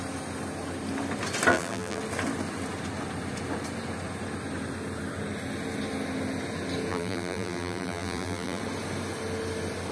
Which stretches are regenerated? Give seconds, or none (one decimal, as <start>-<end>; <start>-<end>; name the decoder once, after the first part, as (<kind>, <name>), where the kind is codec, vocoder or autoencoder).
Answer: 1.5-2.0 (vocoder, BigVGAN v2); 6.9-8.6